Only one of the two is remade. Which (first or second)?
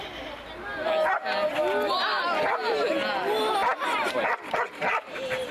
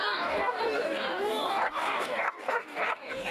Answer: second